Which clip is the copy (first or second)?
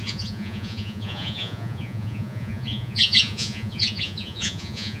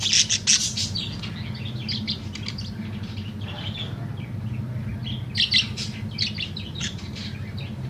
first